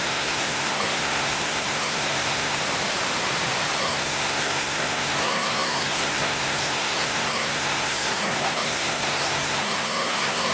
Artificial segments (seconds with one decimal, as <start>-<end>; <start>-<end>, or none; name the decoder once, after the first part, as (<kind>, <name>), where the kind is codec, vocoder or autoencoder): 0.0-2.6 (codec, SNAC); 3.8-10.5